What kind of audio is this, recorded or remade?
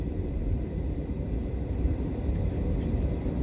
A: remade